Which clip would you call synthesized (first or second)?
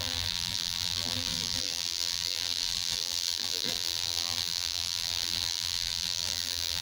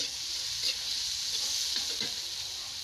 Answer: first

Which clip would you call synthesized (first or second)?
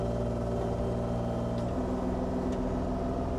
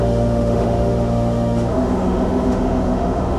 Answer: second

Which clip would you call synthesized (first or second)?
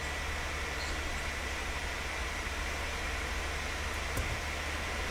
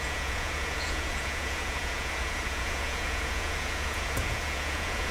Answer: second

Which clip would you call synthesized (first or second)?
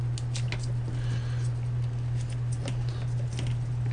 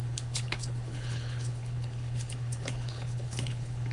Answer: second